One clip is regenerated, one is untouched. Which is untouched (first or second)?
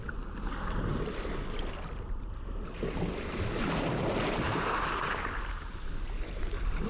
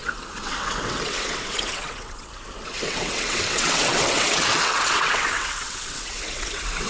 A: first